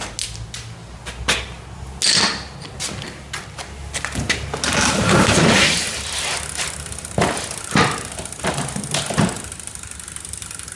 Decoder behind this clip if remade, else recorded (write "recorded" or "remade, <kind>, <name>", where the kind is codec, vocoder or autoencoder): recorded